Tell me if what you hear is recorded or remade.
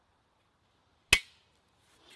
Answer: recorded